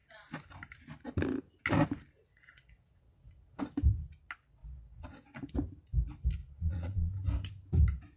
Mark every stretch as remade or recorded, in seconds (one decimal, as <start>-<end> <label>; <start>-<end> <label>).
0.0-2.3 recorded; 2.3-3.6 remade; 3.6-4.6 recorded; 4.6-5.5 remade; 5.5-6.4 recorded; 6.4-7.1 remade; 7.1-8.2 recorded